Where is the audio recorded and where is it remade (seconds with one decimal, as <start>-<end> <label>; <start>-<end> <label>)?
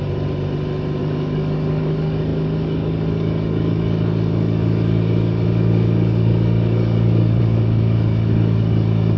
0.0-1.0 recorded; 1.0-9.2 remade